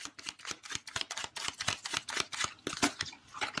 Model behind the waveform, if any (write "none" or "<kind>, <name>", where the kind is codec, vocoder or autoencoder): none